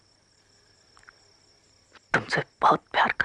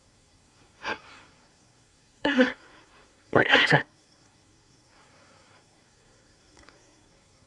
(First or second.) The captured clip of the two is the first